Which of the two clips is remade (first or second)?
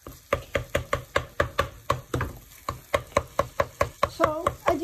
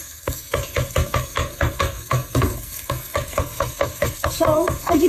second